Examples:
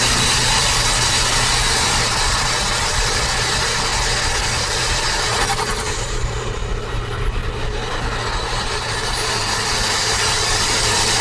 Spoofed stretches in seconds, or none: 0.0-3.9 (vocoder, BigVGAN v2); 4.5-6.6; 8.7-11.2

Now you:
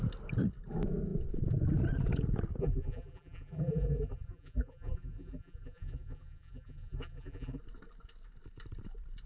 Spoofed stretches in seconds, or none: 2.6-7.6 (vocoder, BigVGAN v2)